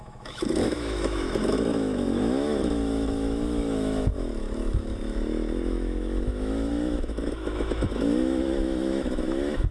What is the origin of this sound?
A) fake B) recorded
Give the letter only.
A